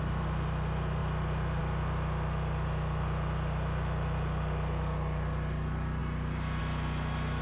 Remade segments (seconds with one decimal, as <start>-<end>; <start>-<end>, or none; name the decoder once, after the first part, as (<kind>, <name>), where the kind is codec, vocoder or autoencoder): none